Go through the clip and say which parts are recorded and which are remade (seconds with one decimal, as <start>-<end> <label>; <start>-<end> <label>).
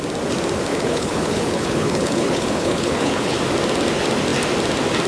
0.0-0.7 recorded; 0.7-3.4 remade; 3.4-5.1 recorded